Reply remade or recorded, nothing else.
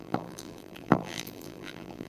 remade